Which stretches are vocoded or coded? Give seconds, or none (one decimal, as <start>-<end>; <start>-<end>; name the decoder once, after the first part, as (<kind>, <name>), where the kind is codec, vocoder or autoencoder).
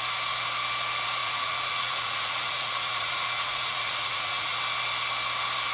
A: 1.2-4.6 (vocoder, Vocos)